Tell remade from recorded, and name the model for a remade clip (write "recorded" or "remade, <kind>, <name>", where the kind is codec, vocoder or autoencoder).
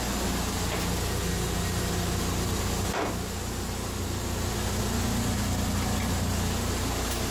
recorded